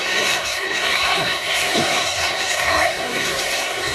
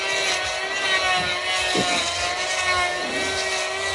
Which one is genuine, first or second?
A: second